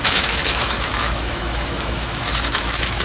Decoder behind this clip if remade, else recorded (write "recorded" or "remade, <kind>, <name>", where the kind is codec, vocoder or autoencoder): remade, autoencoder, DAC-VAE